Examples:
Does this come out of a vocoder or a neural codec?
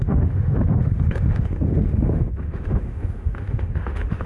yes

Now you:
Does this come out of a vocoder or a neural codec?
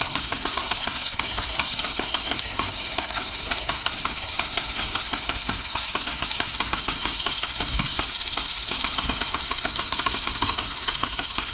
yes